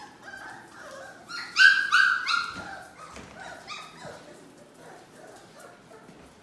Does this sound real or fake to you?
real